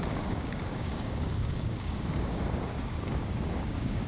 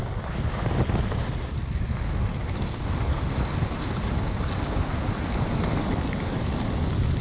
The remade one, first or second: first